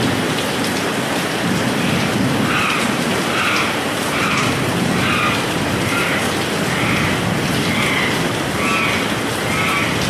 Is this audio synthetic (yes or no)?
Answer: no